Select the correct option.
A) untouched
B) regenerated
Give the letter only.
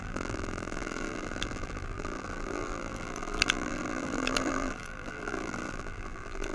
B